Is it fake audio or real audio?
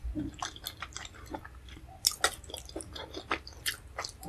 real